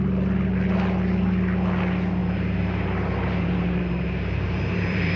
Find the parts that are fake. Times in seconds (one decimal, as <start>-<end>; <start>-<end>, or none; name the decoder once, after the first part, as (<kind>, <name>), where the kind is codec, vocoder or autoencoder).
2.2-5.2 (vocoder, BigVGAN v2)